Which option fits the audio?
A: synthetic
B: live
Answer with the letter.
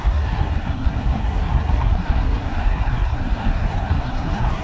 A